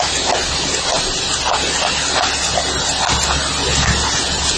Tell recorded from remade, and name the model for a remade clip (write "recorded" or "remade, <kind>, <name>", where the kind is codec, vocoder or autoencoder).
recorded